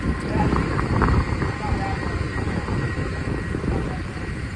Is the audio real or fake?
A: real